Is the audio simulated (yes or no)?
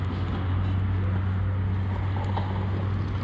no